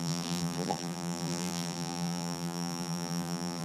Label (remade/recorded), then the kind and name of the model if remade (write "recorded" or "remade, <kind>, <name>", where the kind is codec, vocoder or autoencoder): remade, vocoder, BigVGAN v2